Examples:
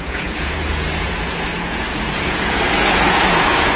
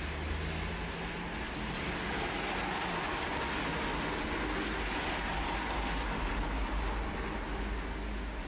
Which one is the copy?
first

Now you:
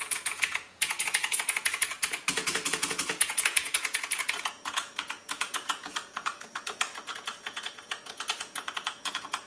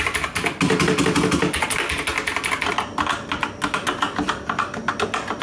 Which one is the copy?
first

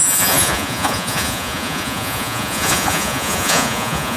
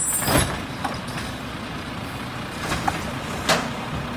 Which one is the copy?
first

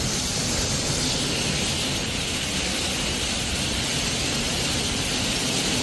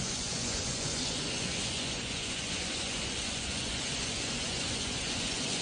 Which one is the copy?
second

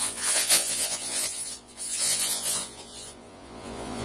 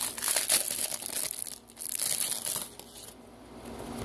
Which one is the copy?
first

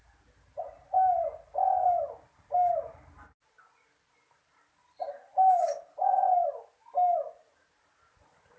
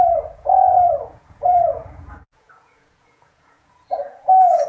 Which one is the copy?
second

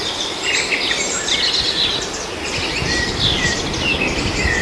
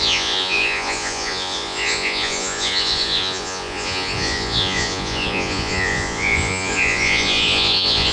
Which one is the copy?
second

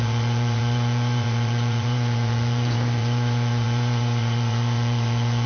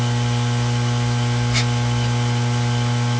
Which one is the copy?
first